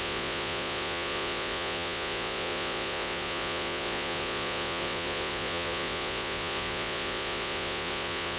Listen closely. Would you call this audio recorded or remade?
remade